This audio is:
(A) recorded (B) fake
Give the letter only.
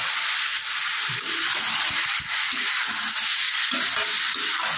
A